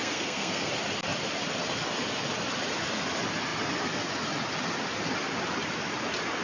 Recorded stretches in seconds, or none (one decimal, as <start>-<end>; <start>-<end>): 0.7-6.4